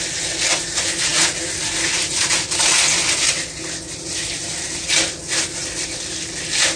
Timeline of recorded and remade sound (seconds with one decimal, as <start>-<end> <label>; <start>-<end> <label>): 0.0-6.8 recorded